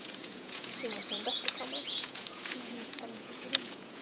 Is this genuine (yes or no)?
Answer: no